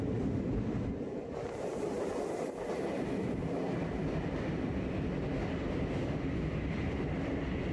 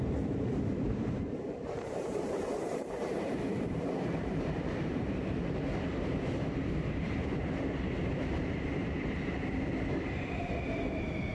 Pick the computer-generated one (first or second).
second